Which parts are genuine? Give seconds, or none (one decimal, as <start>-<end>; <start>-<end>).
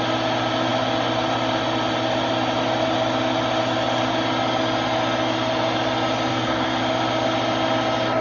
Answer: 0.0-6.3; 6.8-8.2